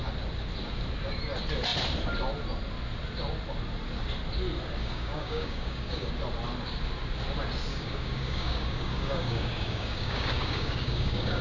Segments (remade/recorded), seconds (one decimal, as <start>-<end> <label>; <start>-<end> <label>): 0.0-4.8 recorded; 4.8-6.1 remade; 6.1-7.7 recorded; 7.7-11.4 remade